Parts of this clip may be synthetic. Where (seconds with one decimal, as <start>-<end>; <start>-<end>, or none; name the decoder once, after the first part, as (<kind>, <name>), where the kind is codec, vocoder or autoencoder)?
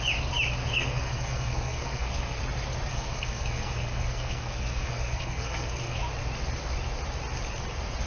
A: 0.7-2.4 (codec, SNAC); 2.9-6.0